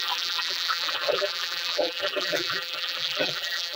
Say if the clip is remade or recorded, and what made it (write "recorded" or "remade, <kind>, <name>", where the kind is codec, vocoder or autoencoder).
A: remade, vocoder, BigVGAN v2